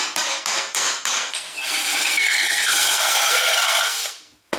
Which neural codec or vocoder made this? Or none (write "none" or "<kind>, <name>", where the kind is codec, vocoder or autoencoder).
codec, SNAC